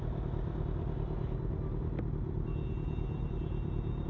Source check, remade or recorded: recorded